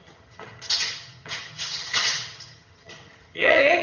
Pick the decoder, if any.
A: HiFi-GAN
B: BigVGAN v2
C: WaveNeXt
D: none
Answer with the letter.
A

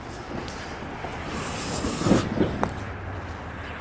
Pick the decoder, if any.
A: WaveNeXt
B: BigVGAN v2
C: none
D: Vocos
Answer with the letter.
C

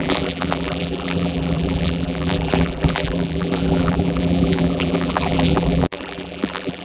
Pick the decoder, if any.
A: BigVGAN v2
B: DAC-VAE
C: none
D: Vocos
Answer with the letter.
A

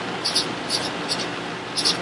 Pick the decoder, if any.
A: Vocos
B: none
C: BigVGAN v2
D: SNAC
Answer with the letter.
B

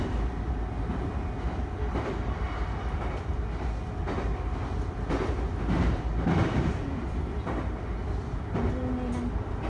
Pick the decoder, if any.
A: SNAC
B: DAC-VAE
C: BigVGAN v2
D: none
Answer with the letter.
D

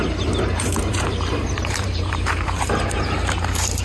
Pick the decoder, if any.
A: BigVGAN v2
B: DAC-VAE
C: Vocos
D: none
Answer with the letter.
A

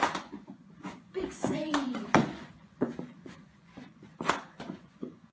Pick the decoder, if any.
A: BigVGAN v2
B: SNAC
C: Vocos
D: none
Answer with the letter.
C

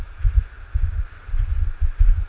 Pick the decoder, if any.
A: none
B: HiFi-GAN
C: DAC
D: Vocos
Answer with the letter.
A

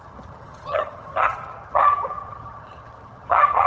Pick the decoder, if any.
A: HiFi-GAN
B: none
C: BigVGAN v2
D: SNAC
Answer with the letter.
A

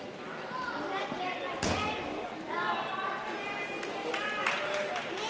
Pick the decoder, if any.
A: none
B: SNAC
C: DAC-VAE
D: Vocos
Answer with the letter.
A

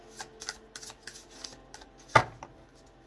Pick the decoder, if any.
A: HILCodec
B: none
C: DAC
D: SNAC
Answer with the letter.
B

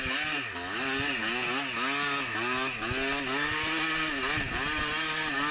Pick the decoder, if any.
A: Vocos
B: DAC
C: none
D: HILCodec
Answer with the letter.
C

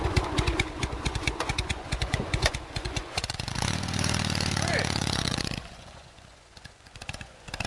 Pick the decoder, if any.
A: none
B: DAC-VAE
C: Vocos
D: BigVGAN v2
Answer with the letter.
C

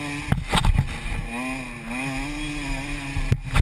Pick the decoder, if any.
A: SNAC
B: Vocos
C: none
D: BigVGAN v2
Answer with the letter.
C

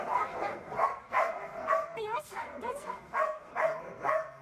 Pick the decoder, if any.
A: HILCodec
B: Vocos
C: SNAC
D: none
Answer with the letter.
C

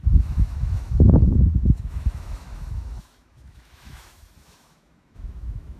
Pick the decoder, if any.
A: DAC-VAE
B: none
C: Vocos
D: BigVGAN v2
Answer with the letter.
A